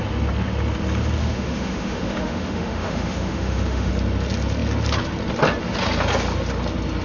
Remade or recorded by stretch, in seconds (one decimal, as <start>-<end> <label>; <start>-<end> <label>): 0.0-1.2 recorded; 1.2-3.9 remade; 3.9-7.0 recorded